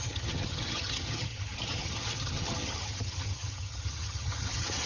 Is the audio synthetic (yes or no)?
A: yes